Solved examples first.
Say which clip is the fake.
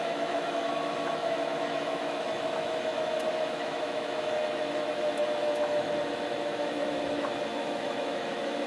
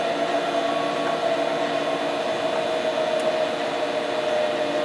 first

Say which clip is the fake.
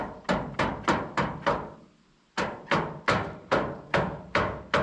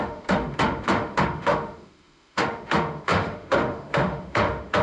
second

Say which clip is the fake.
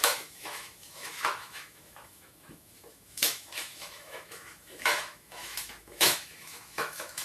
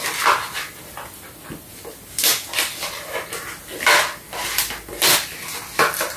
first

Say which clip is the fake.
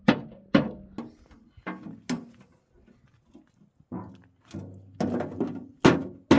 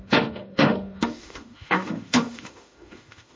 second